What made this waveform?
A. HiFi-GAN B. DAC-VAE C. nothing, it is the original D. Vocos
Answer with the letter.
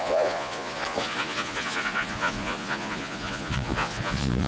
D